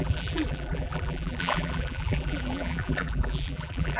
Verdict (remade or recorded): remade